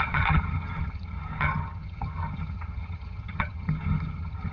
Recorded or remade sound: remade